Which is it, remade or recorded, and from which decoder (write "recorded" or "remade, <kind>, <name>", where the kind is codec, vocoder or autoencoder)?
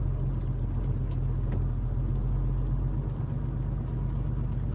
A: recorded